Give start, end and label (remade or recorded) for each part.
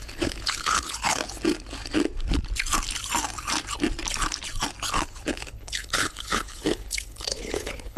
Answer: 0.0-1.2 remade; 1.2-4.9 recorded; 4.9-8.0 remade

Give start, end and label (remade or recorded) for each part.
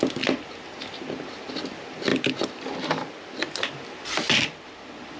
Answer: 0.0-5.2 recorded